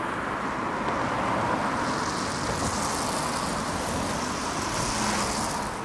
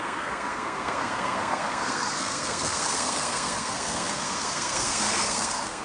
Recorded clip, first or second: first